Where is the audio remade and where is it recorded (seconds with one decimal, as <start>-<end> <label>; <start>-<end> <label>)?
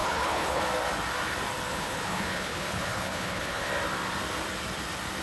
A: 0.0-0.6 remade; 0.6-1.7 recorded; 1.7-3.7 remade; 3.7-5.2 recorded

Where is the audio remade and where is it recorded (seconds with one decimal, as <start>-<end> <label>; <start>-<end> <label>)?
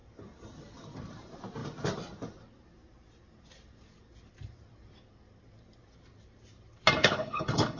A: 0.0-7.0 recorded; 7.0-7.8 remade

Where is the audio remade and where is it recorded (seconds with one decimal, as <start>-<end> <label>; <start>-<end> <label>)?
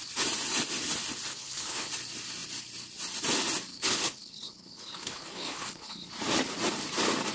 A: 0.0-1.3 recorded; 1.3-1.9 remade; 1.9-3.7 recorded; 3.7-6.1 remade; 6.1-7.3 recorded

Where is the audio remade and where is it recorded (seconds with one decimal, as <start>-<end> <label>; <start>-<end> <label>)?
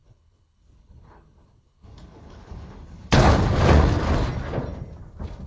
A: 0.0-3.3 remade; 3.3-5.5 recorded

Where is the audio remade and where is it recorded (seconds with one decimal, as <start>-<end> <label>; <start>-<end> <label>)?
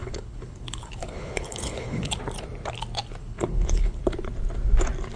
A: 0.0-2.1 remade; 2.1-3.2 recorded; 3.2-4.0 remade; 4.0-5.2 recorded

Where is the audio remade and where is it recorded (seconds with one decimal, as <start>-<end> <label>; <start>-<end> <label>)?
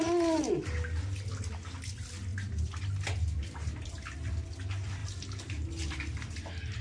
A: 0.0-6.8 recorded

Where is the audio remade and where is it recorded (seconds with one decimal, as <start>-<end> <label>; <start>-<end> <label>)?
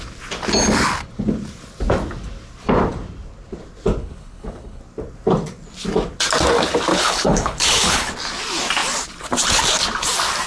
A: 0.0-4.0 recorded; 4.0-4.8 remade; 4.8-6.9 recorded; 6.9-8.1 remade; 8.1-10.5 recorded